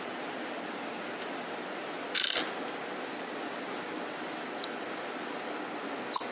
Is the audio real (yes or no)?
yes